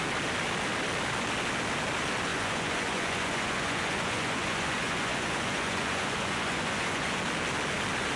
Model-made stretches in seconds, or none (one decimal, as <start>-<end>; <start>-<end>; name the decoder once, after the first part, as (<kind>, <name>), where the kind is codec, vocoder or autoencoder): 2.3-7.2 (vocoder, Vocos)